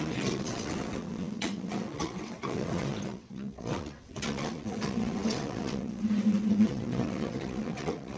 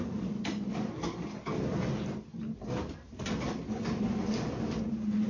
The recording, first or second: second